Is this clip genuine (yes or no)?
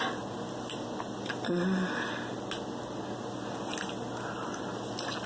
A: yes